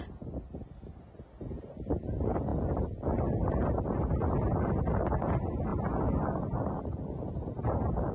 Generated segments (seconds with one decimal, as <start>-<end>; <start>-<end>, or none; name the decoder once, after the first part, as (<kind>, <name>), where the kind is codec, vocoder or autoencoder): none